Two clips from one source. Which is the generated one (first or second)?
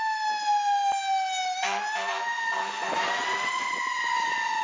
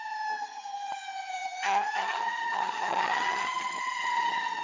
second